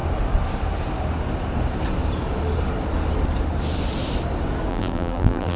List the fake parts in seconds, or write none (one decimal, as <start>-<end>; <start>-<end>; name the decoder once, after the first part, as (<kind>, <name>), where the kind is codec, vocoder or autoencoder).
4.7-5.6 (vocoder, BigVGAN v2)